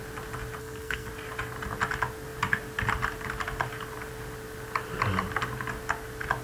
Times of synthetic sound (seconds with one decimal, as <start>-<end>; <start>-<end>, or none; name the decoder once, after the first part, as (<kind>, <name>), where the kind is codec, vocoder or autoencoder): 0.6-1.1 (codec, SNAC)